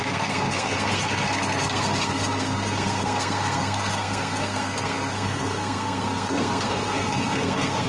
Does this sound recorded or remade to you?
remade